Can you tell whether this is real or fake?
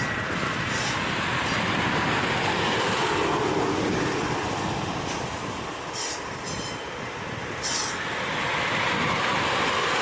real